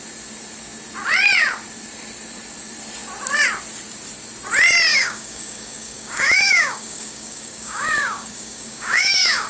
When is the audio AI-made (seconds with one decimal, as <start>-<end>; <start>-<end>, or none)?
4.9-9.5